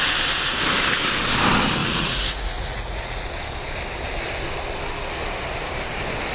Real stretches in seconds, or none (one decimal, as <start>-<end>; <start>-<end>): 0.0-1.8; 3.3-6.3